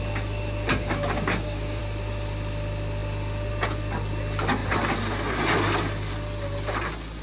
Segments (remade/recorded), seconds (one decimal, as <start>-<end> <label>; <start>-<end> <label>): 0.0-0.7 recorded; 0.7-1.8 remade; 1.8-7.2 recorded